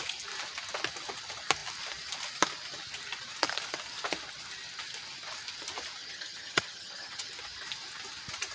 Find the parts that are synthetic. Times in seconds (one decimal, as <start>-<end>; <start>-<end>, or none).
6.0-7.3